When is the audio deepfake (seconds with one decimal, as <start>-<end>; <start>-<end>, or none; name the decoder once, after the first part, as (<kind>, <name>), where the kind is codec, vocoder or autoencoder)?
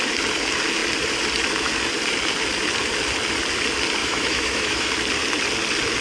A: 4.0-4.9 (autoencoder, DAC-VAE)